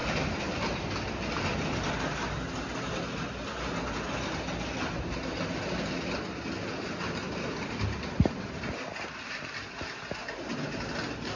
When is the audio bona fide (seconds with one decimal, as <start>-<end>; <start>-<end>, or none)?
0.8-10.2; 10.9-11.4

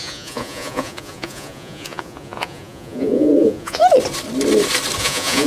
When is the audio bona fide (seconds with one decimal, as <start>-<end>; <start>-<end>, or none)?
3.8-5.0

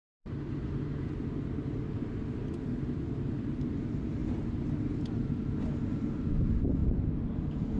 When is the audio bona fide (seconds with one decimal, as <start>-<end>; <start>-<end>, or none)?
0.0-7.8